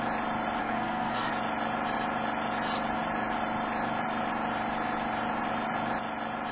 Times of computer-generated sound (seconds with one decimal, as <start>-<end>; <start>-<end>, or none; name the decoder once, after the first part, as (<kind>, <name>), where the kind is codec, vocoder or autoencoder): 0.6-1.3 (codec, SNAC)